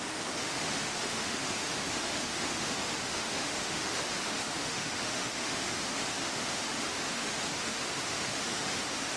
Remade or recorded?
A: remade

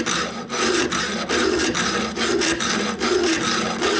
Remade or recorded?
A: recorded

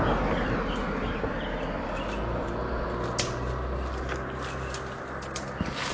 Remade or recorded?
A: recorded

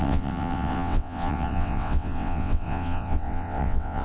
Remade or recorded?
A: remade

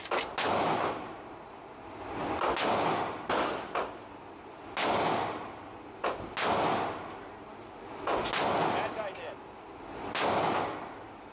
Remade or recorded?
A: recorded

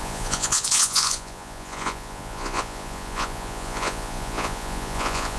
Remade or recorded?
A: remade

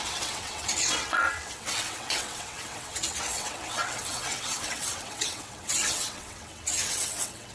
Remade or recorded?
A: remade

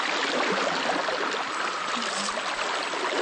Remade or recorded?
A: recorded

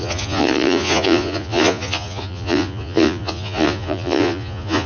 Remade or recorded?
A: remade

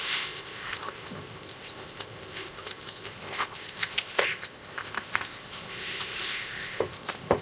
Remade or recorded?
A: remade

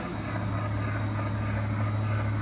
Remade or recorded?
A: recorded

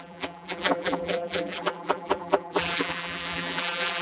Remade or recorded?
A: remade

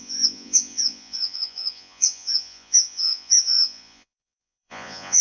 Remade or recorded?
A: remade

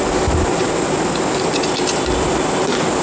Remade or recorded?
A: recorded